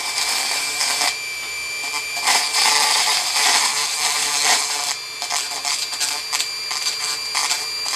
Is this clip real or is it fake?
fake